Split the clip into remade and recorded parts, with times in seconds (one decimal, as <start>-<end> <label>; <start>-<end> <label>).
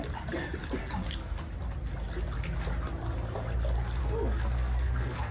0.0-0.8 recorded; 0.8-1.4 remade; 1.4-4.0 recorded; 4.0-5.3 remade